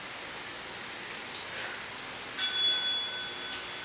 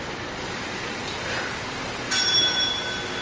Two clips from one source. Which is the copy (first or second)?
second